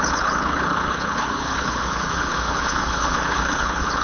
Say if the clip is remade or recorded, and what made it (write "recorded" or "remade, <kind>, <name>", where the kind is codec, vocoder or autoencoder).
remade, codec, HILCodec